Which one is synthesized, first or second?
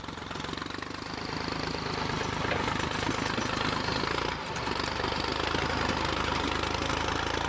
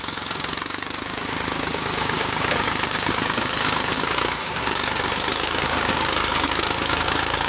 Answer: second